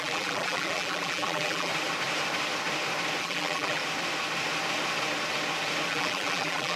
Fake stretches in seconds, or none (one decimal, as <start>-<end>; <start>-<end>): 0.0-1.7; 3.2-3.8; 5.9-6.8